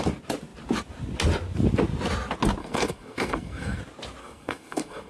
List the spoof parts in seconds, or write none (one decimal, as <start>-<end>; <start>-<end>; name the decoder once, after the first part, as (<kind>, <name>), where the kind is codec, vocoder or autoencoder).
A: 2.6-3.8 (codec, SNAC); 4.2-5.1

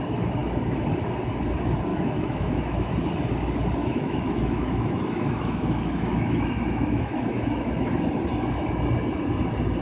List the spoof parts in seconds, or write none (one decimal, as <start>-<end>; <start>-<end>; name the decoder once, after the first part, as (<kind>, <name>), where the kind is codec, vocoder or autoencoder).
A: 1.9-2.9 (autoencoder, DAC-VAE); 3.8-7.7

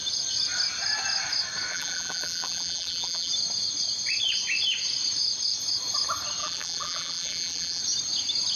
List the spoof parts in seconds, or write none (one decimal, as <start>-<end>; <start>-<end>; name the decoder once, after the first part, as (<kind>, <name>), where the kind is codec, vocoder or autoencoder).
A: 1.7-3.3 (vocoder, BigVGAN v2); 6.4-7.8

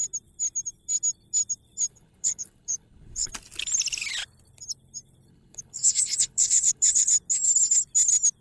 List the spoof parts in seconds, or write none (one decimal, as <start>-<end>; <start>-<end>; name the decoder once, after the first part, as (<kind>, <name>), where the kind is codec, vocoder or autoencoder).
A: 1.9-3.3 (codec, HILCodec); 5.3-7.1

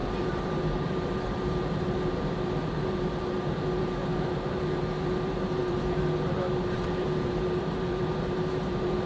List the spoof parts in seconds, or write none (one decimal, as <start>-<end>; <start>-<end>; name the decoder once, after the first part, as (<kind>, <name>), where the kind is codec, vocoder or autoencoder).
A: 0.0-9.1 (vocoder, BigVGAN v2)

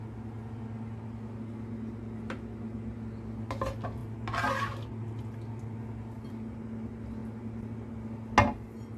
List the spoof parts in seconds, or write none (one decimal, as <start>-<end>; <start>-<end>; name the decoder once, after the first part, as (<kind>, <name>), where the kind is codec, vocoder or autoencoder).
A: none

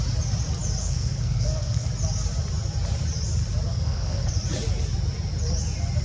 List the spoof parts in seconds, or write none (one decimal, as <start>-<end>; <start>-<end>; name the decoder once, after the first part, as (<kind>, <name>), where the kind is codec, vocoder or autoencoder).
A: 0.8-1.9 (codec, SNAC); 3.7-4.3

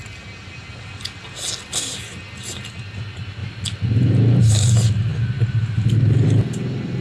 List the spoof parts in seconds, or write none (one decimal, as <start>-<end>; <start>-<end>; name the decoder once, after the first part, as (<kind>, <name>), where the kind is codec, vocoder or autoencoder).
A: none